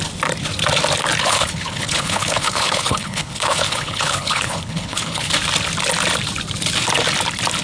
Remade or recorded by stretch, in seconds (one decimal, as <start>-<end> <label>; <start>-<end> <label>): 0.0-1.2 recorded; 1.2-5.3 remade; 5.3-7.6 recorded